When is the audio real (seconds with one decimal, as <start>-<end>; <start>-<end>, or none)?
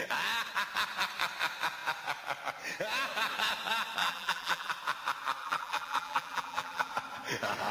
0.0-4.0; 4.7-5.4; 6.9-7.7